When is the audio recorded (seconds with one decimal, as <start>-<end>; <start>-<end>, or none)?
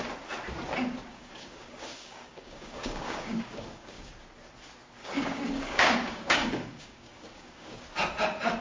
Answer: 0.0-1.1; 4.1-5.0; 7.8-8.6